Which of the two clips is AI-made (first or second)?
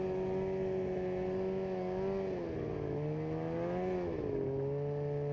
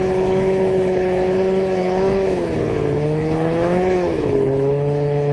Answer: second